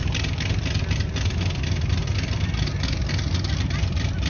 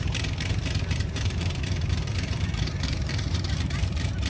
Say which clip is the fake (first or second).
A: second